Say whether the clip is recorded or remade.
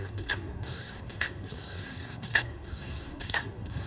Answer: remade